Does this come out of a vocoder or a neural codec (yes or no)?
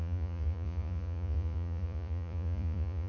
yes